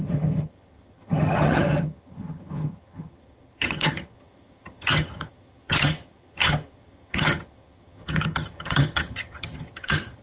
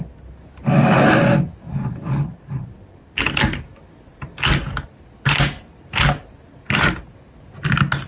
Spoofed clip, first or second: first